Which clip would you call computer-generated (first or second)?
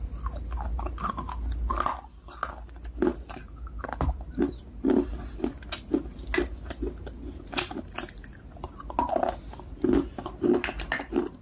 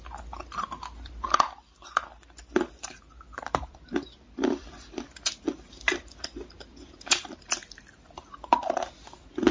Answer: second